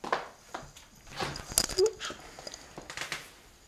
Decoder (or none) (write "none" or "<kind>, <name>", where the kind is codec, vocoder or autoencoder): none